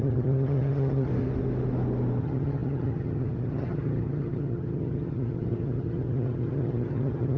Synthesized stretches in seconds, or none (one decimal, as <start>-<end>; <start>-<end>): 0.0-1.1; 2.2-7.4